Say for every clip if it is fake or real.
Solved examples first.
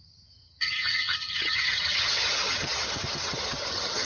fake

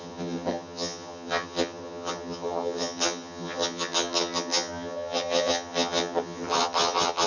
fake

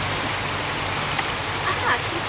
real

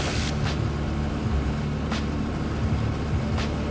real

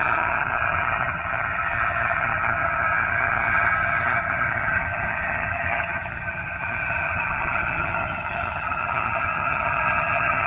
fake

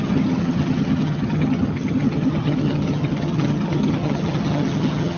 fake